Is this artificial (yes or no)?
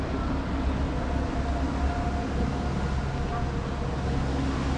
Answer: no